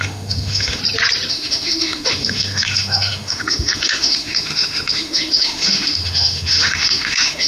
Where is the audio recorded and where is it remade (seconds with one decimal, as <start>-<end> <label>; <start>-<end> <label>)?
0.0-0.8 remade; 0.8-1.3 recorded; 1.3-7.5 remade